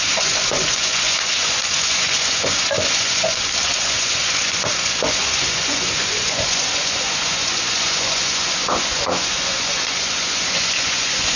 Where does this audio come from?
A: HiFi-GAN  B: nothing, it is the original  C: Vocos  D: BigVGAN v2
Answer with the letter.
C